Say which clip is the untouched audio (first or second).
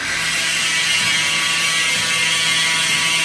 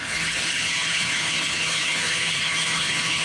first